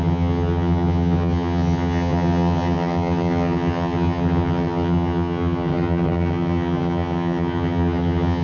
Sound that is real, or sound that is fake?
fake